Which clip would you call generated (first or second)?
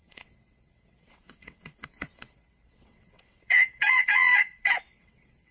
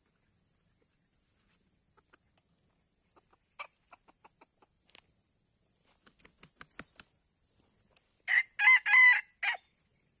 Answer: first